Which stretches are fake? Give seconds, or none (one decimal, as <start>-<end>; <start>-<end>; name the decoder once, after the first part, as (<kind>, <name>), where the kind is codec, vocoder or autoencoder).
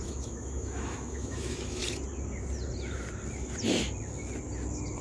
0.0-1.8 (autoencoder, DAC-VAE)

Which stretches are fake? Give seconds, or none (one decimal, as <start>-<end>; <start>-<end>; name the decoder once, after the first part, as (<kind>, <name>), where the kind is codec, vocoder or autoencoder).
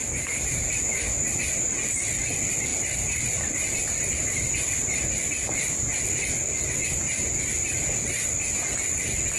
0.0-1.4 (vocoder, BigVGAN v2); 2.7-4.5